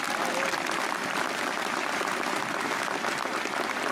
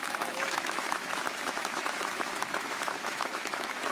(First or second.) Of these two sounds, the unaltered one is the first